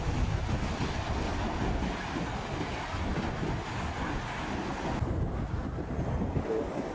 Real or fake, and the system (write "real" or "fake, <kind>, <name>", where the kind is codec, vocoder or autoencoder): real